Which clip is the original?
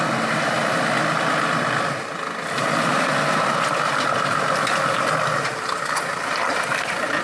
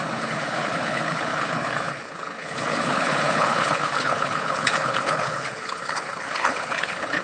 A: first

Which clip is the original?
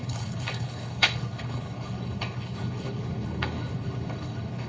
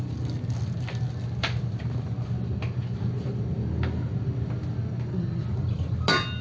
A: second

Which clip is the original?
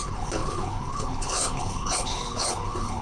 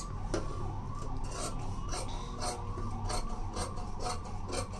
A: second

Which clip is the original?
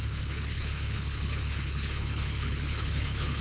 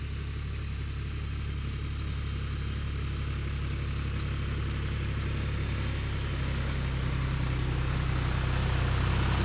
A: second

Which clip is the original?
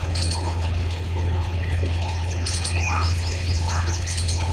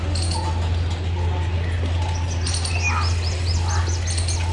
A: second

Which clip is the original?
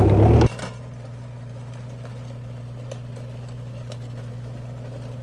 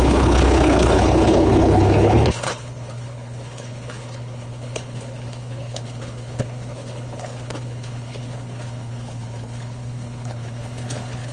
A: first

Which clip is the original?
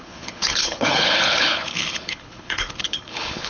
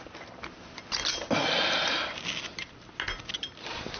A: second